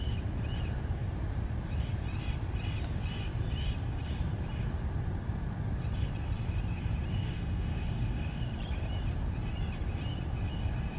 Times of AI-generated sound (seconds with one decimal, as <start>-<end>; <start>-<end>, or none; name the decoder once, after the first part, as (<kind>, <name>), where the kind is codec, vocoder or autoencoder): 7.1-8.5 (autoencoder, DAC-VAE)